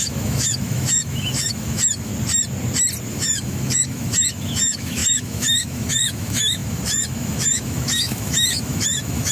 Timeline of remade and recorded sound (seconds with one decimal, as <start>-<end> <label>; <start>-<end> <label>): 0.0-2.1 remade; 2.1-3.1 recorded; 3.1-9.3 remade

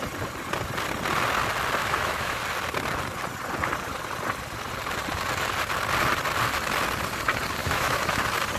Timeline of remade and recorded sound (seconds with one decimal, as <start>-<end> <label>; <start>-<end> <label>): 0.0-1.8 recorded; 1.8-2.4 remade; 2.4-7.6 recorded; 7.6-8.2 remade; 8.2-8.6 recorded

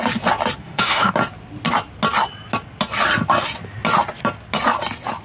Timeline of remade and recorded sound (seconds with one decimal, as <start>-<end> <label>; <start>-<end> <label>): 0.0-0.6 recorded; 0.6-1.1 remade; 1.1-5.2 recorded

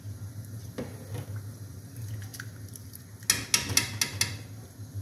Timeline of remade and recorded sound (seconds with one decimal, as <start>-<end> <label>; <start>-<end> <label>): 0.0-5.0 recorded

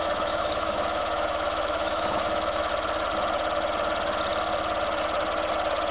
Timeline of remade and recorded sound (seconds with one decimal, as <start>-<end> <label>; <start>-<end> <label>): 0.0-2.7 remade; 2.7-5.9 recorded

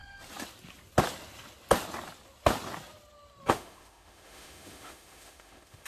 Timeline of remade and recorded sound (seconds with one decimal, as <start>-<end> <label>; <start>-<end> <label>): 0.0-3.5 recorded; 3.5-5.9 remade